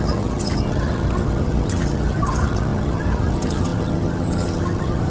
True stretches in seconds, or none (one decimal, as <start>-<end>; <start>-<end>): none